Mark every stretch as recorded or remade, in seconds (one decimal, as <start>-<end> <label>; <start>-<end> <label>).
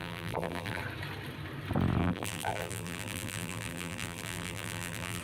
0.0-0.8 remade; 0.8-2.0 recorded; 2.0-5.2 remade